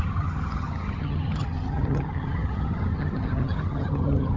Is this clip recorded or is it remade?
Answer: remade